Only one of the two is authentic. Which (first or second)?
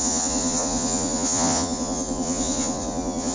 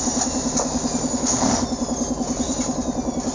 second